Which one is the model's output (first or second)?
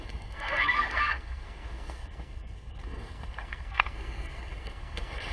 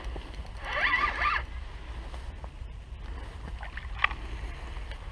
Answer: first